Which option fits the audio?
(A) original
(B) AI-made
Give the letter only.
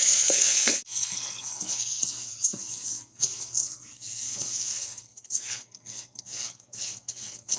B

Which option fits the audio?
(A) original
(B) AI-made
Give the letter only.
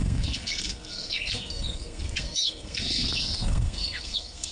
B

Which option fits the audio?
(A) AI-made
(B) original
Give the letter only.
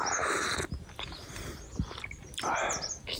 B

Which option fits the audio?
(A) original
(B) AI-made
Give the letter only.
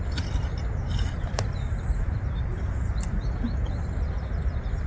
B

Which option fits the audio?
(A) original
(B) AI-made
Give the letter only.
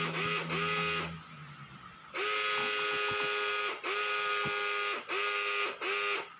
A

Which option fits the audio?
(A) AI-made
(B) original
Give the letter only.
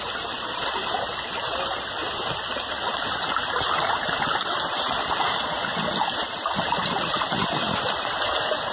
B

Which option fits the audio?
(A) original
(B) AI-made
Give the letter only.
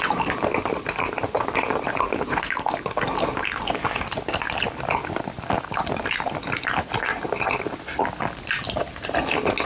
A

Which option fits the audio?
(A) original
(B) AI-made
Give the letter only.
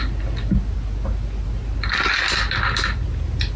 A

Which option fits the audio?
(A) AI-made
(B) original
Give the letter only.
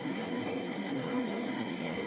A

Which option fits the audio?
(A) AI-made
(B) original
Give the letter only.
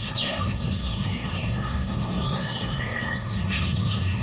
A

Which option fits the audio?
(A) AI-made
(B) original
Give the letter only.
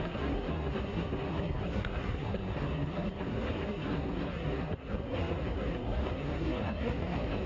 A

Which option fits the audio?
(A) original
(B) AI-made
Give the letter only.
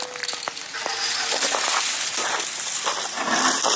A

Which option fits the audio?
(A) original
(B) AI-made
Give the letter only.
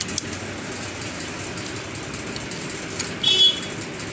A